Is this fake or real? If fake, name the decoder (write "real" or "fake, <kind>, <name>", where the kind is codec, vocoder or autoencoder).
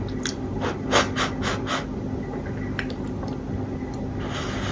real